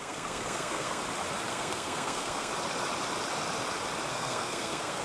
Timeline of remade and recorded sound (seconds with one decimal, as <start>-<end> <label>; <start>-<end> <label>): 0.0-1.0 remade; 1.0-1.5 recorded; 1.5-2.5 remade; 2.5-4.1 recorded; 4.1-5.0 remade